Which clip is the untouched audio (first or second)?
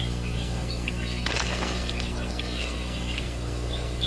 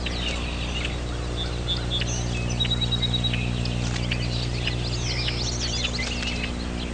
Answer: second